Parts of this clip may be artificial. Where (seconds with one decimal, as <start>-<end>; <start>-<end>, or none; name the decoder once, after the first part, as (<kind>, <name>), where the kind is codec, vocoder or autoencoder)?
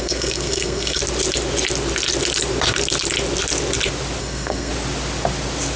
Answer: 0.0-1.0 (codec, SNAC); 4.2-4.7